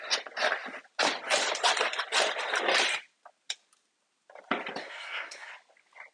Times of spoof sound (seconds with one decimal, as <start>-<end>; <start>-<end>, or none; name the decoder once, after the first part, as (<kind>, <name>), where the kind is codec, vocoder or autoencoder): 4.8-5.5 (codec, SNAC)